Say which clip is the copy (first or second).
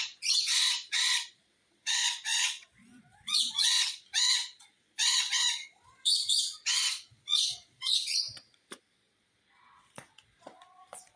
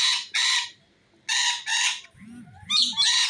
first